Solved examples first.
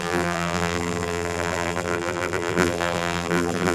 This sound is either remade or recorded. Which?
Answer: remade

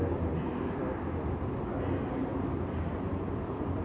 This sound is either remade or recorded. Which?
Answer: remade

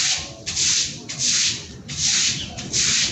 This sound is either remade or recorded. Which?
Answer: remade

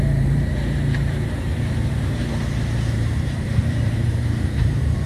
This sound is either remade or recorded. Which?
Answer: remade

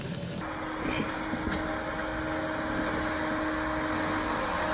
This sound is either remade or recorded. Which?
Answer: recorded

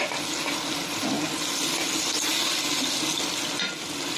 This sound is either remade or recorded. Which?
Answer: recorded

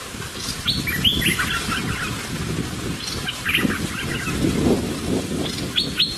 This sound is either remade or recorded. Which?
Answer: remade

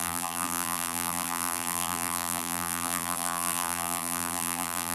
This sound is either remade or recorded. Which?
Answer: remade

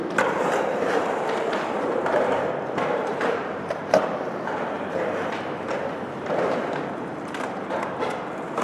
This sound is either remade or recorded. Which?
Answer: remade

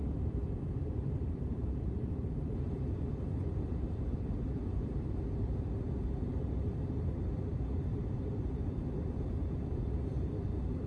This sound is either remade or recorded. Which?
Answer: remade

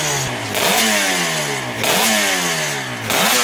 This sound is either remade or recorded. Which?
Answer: recorded